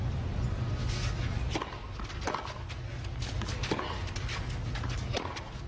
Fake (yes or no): no